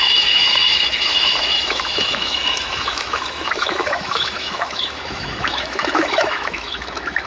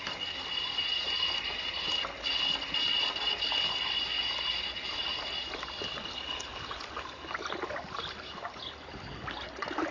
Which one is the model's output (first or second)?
first